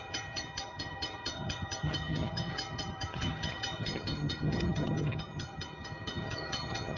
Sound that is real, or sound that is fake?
fake